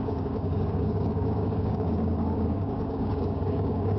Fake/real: fake